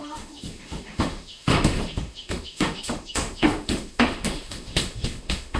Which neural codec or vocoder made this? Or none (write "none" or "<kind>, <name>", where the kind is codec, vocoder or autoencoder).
autoencoder, DAC-VAE